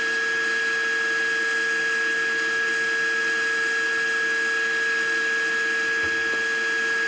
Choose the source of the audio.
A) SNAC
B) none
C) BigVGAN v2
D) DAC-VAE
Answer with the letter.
B